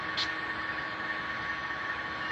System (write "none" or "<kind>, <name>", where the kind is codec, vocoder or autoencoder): none